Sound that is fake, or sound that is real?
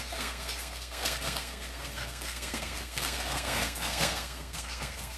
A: fake